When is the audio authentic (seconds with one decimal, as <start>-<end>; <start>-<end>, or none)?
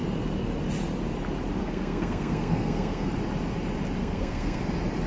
0.0-1.6; 3.1-4.0; 4.6-5.1